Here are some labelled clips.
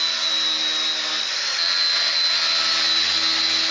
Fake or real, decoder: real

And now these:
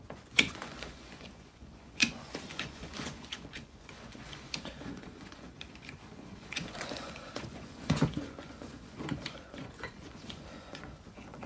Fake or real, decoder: fake, vocoder, Vocos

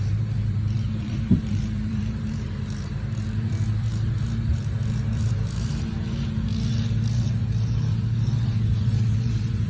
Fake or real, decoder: fake, vocoder, BigVGAN v2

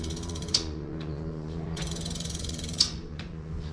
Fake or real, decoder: fake, vocoder, Vocos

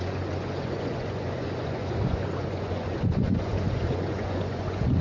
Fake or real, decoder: fake, vocoder, Vocos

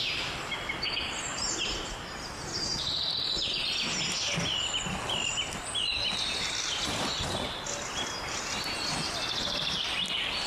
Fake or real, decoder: real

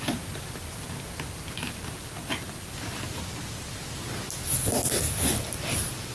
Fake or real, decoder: real